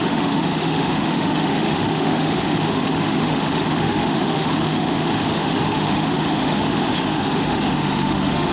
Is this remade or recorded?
remade